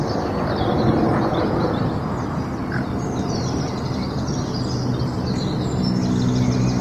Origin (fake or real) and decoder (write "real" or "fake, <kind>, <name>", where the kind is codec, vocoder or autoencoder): real